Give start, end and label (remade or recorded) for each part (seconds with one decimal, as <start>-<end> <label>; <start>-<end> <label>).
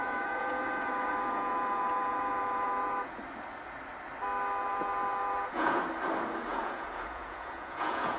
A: 0.0-3.2 remade; 3.2-4.6 recorded; 4.6-5.8 remade; 5.8-6.5 recorded; 6.5-8.2 remade